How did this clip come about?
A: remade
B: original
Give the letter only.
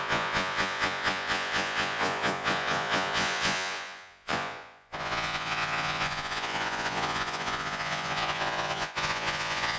A